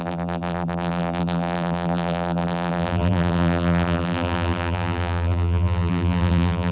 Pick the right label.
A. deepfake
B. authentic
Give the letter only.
A